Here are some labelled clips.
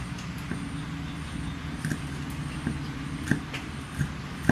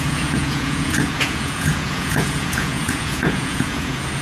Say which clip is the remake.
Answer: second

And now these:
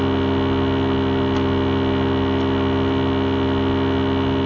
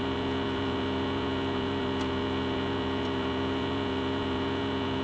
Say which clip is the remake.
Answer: second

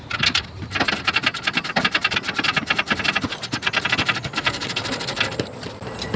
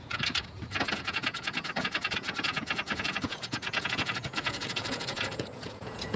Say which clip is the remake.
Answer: second